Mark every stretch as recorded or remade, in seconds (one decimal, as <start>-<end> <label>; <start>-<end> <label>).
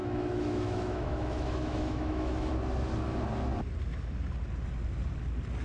0.0-2.5 remade; 2.5-5.6 recorded